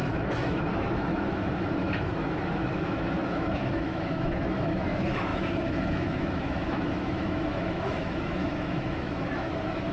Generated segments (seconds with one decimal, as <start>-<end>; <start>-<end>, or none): 0.0-9.9